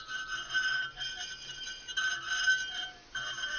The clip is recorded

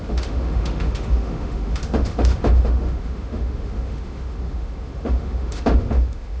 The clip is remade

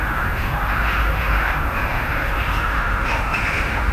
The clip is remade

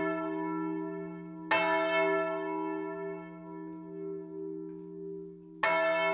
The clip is recorded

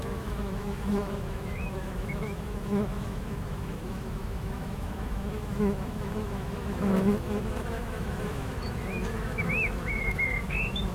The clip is remade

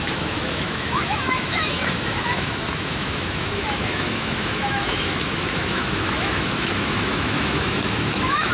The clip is remade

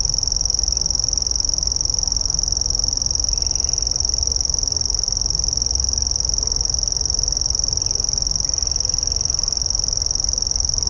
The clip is recorded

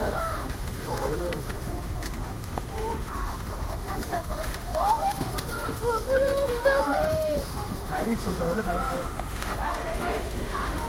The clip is remade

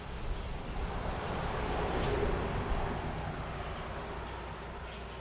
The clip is recorded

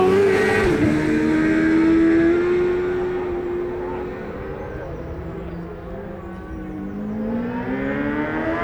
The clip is recorded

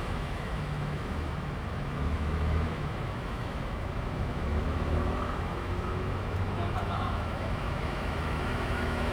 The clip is remade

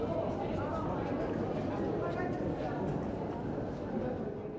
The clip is recorded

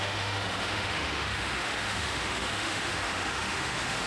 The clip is remade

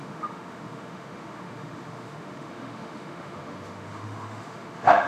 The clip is remade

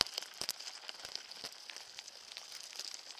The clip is recorded